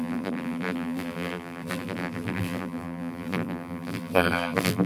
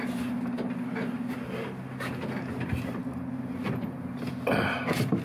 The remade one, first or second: first